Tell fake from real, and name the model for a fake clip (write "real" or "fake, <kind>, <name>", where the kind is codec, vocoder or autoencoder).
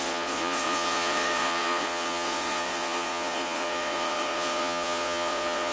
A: fake, vocoder, Vocos